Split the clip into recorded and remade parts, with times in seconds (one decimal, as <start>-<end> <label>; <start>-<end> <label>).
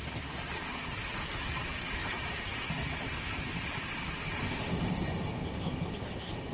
0.0-2.0 recorded; 2.0-3.4 remade; 3.4-6.5 recorded